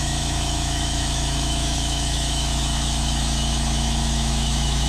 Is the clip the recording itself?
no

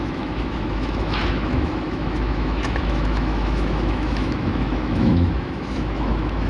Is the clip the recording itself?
no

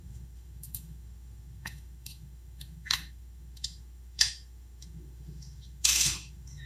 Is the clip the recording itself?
no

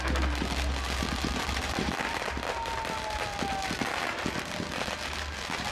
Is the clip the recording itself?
yes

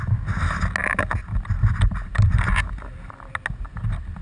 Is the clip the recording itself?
yes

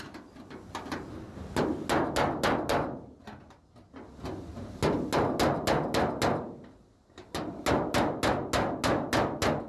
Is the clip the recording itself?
yes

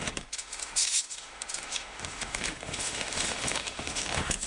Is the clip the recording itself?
no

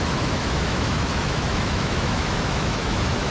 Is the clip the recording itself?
no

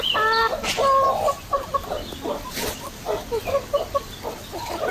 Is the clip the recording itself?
yes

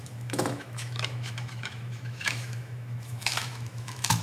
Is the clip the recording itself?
no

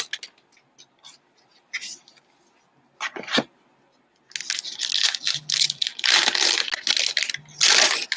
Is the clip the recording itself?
yes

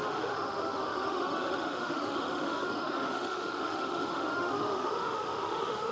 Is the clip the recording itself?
no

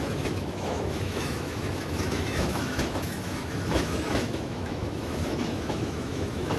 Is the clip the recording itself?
no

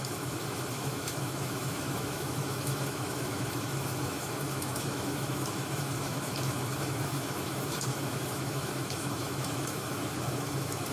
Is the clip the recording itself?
no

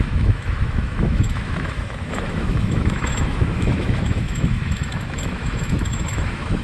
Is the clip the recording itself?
no